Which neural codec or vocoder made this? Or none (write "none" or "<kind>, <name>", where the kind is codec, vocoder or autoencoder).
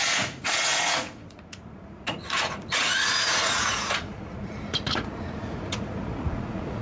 vocoder, Vocos